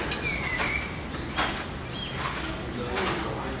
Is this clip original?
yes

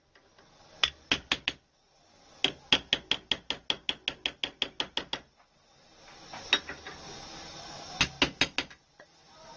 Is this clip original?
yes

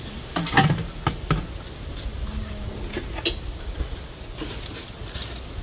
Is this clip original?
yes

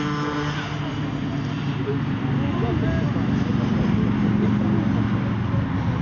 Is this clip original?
yes